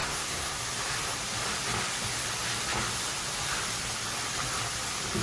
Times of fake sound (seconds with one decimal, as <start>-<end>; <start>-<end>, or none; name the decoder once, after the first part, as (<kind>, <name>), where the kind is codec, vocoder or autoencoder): 0.0-0.6 (codec, SNAC)